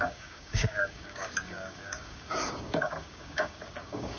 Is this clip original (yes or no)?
no